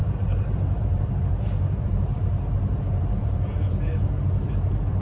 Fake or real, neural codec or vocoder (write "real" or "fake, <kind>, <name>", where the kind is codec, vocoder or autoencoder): fake, vocoder, BigVGAN v2